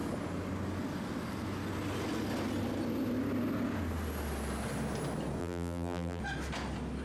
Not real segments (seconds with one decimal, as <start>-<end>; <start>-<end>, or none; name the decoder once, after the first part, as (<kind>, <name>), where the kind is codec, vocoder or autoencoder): 5.4-6.2 (vocoder, BigVGAN v2)